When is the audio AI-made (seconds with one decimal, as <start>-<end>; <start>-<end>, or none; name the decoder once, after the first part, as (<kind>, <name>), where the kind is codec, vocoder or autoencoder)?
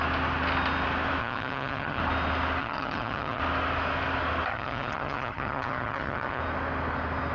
1.2-2.0 (vocoder, HiFi-GAN); 2.6-3.4; 4.5-6.4